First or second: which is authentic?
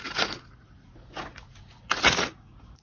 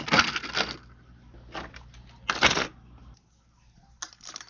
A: second